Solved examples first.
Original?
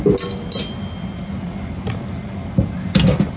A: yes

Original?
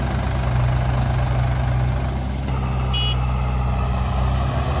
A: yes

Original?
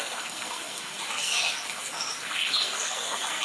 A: no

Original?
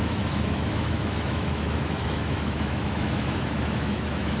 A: no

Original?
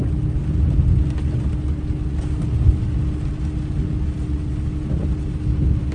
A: yes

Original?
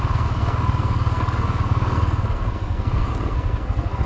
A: no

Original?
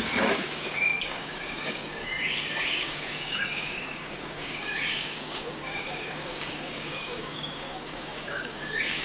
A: no